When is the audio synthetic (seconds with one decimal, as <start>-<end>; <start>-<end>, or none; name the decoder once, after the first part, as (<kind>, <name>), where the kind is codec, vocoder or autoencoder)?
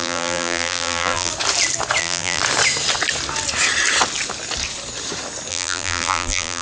0.0-1.3 (vocoder, BigVGAN v2); 2.0-2.4; 5.5-6.6